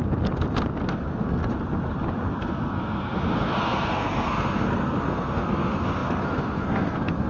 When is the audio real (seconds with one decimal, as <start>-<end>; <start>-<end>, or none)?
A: 0.0-0.9; 1.4-2.3